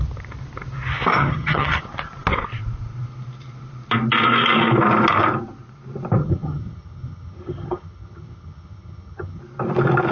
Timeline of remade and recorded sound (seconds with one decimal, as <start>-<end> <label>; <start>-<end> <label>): 0.0-1.2 recorded; 1.2-1.8 remade; 1.8-6.2 recorded; 6.2-9.4 remade; 9.4-10.1 recorded